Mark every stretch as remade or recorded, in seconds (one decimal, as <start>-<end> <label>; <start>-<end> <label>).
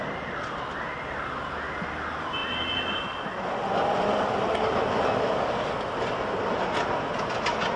0.0-7.8 recorded